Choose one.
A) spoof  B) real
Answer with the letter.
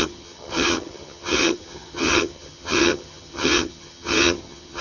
A